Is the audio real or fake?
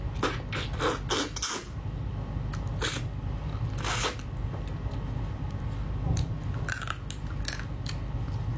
real